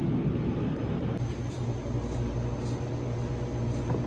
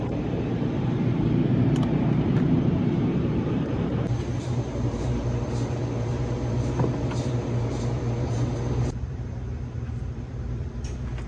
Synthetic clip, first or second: second